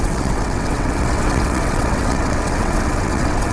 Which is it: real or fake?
fake